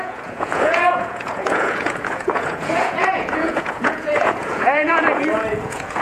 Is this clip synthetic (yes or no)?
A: yes